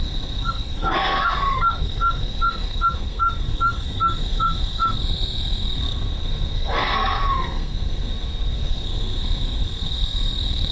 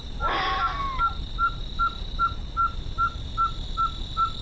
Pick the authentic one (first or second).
second